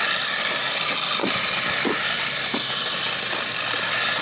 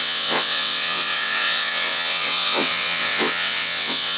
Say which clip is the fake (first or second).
second